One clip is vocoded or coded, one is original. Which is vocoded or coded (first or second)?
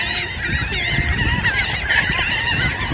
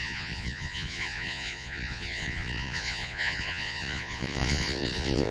second